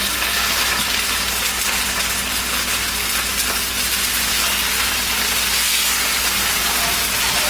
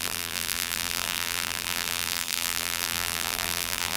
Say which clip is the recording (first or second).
first